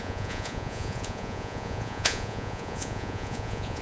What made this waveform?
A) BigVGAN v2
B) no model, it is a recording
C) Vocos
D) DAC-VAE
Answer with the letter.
C